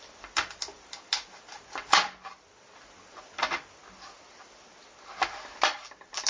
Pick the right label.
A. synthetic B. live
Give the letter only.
B